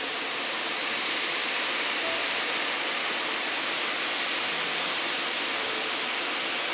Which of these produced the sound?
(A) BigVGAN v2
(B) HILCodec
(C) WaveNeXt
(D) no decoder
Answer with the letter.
D